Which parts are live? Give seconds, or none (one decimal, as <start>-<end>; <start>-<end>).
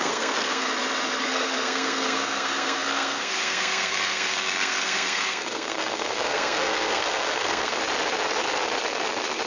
0.7-1.2; 7.8-9.5